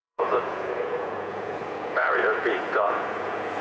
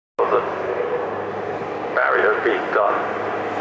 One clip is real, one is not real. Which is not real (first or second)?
first